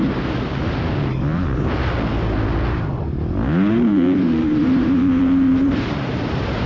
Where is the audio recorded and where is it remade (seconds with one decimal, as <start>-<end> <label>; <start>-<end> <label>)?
0.0-0.6 remade; 0.6-3.7 recorded; 3.7-6.7 remade